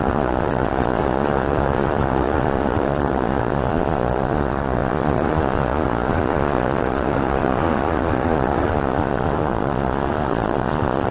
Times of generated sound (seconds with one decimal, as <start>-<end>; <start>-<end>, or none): 0.0-11.1